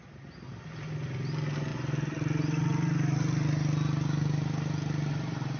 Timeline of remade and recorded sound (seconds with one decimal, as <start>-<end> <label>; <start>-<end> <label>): 0.0-5.6 recorded